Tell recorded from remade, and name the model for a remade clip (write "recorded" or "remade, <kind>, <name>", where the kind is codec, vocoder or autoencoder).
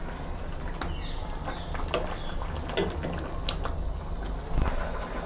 recorded